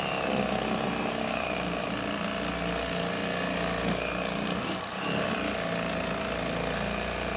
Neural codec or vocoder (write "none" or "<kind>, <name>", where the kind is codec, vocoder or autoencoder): none